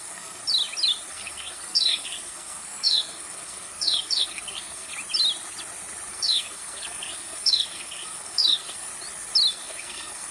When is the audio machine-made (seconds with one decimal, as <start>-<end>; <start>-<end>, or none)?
0.0-0.4; 1.1-4.9; 6.1-8.9; 9.5-10.3